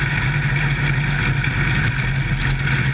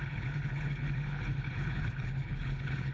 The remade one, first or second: second